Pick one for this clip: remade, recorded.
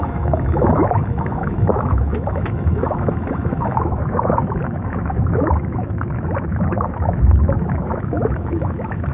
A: remade